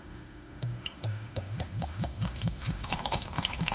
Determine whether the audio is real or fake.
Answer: fake